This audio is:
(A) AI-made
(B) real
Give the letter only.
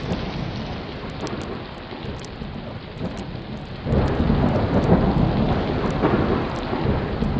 B